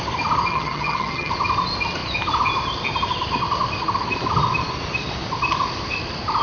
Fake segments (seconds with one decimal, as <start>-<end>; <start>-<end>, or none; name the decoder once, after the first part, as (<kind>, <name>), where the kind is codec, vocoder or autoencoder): 0.5-1.3 (vocoder, HiFi-GAN)

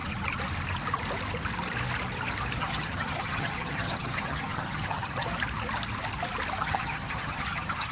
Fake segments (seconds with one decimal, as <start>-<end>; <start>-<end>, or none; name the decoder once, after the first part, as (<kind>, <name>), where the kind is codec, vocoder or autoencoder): 2.6-5.3 (vocoder, HiFi-GAN); 6.6-7.9